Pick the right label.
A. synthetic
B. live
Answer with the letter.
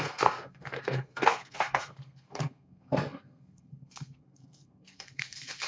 A